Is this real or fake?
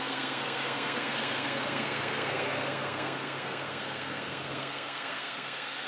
fake